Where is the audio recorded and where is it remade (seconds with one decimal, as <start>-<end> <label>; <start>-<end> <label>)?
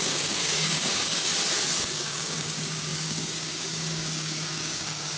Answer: 0.0-1.3 remade; 1.3-1.9 recorded; 1.9-5.2 remade